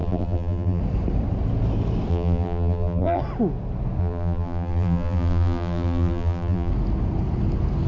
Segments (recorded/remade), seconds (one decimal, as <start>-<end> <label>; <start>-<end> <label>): 0.0-0.8 remade; 0.8-2.1 recorded; 2.1-3.2 remade; 3.2-4.0 recorded; 4.0-6.7 remade; 6.7-7.9 recorded